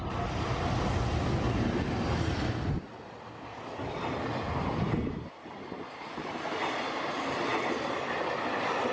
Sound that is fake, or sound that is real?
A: real